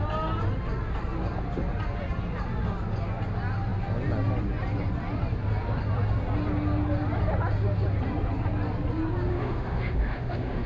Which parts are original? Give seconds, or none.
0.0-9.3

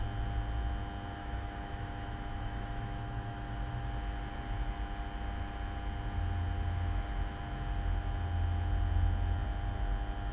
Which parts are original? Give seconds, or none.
0.0-1.2; 3.9-10.3